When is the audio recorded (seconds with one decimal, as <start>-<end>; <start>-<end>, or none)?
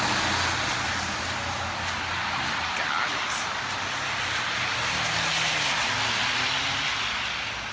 0.0-7.7